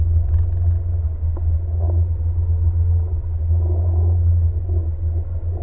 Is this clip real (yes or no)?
yes